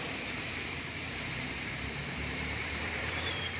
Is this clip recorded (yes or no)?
no